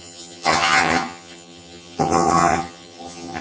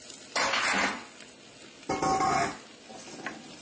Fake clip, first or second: first